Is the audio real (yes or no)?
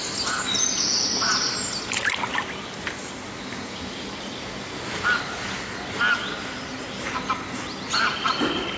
yes